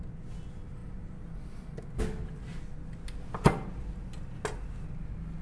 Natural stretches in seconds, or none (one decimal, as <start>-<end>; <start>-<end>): 0.0-5.4

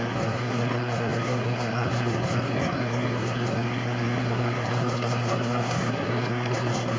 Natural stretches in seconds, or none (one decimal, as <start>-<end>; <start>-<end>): none

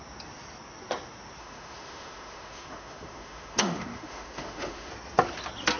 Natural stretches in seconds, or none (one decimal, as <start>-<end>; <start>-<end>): 0.0-1.4; 4.9-5.8

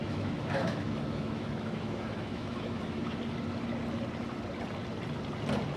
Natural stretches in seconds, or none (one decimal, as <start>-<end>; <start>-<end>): 3.2-5.8

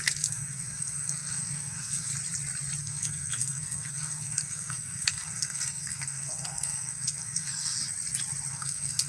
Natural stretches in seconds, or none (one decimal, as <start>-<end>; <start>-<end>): 2.1-2.8; 7.8-8.5

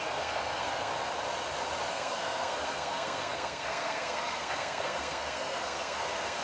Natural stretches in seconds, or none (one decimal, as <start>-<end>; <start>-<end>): 0.9-1.9

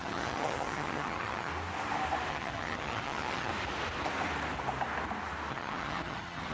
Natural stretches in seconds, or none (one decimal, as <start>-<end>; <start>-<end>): 1.5-2.3; 3.5-5.5

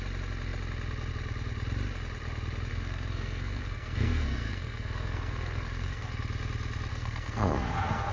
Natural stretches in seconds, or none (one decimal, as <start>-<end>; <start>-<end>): 0.0-2.7; 6.1-6.9